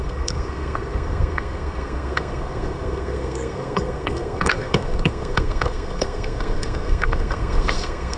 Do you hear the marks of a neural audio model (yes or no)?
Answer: yes